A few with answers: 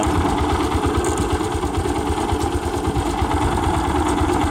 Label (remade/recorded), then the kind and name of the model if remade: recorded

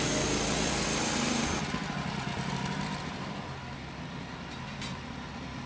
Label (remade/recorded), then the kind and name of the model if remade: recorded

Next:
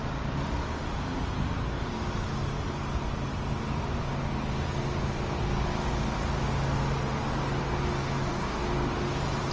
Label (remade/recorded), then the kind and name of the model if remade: recorded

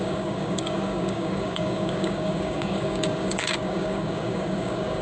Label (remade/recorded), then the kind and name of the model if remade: remade, codec, DAC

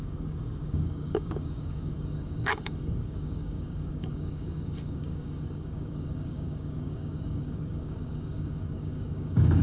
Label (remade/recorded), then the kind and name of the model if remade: remade, codec, DAC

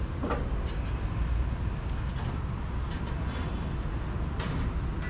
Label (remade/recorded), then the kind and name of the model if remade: recorded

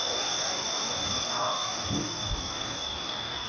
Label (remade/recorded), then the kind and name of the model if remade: remade, codec, DAC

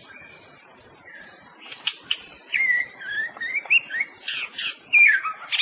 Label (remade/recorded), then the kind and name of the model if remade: recorded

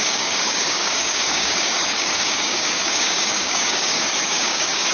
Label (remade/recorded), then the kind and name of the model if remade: remade, codec, DAC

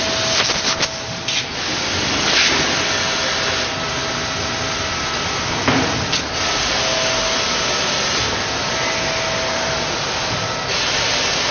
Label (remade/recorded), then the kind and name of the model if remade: recorded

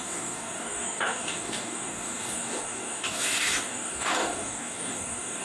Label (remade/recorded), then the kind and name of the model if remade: remade, codec, DAC